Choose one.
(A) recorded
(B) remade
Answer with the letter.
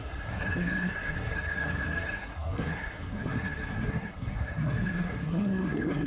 B